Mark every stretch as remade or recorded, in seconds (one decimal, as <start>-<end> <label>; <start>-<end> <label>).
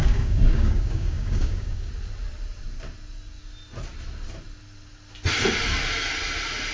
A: 0.0-1.9 remade; 1.9-6.7 recorded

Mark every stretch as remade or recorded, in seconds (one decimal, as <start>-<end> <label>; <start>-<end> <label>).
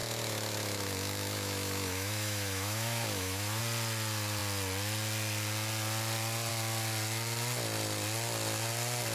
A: 0.0-3.6 remade; 3.6-9.1 recorded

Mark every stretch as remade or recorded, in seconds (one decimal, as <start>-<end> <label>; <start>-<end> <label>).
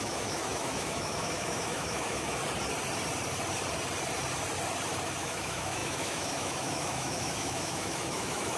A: 0.0-2.4 remade; 2.4-5.2 recorded; 5.2-8.6 remade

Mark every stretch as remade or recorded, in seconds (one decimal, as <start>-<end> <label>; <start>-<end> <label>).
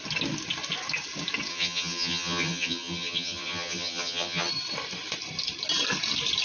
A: 0.0-1.5 recorded; 1.5-4.5 remade; 4.5-6.4 recorded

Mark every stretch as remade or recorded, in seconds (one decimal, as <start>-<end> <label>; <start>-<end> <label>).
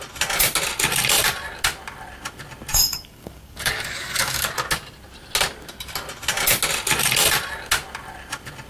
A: 0.0-2.7 recorded; 2.7-4.5 remade; 4.5-8.7 recorded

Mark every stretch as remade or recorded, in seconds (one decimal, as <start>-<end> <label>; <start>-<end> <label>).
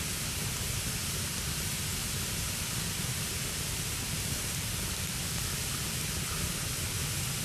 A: 0.0-2.0 recorded; 2.0-6.0 remade; 6.0-7.4 recorded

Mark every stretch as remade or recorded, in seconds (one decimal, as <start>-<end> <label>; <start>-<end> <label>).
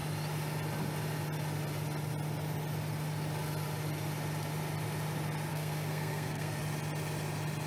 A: 0.0-5.5 recorded; 5.5-6.6 remade; 6.6-7.7 recorded